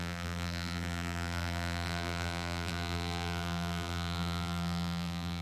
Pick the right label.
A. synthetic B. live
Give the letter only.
A